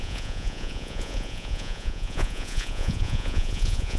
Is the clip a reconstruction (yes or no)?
yes